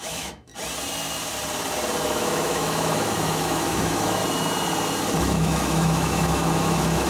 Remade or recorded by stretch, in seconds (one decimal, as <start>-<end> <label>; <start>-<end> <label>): 0.0-0.5 remade; 0.5-2.0 recorded; 2.0-4.2 remade; 4.2-5.2 recorded; 5.2-7.1 remade

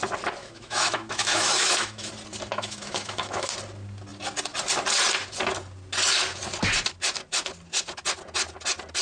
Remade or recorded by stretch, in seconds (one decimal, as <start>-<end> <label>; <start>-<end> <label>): 0.0-0.4 recorded; 0.4-2.1 remade; 2.1-2.5 recorded; 2.5-3.5 remade; 3.5-9.0 recorded

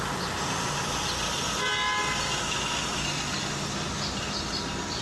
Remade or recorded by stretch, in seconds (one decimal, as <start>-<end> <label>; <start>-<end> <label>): 0.0-5.0 recorded